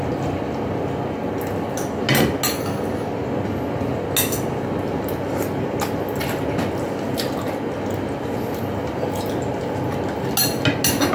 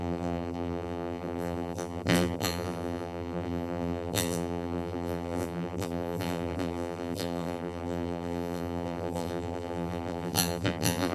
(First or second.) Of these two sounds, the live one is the first